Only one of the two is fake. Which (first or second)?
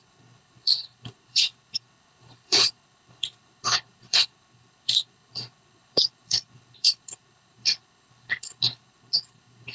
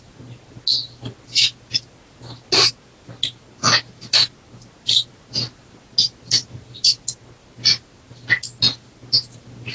first